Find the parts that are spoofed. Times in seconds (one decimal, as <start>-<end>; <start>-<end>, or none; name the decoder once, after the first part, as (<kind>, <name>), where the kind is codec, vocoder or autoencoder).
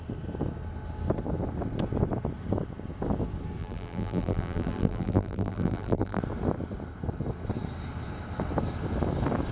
3.6-6.2 (vocoder, BigVGAN v2)